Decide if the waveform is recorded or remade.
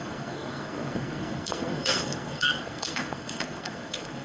remade